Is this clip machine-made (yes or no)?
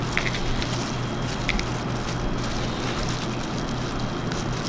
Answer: no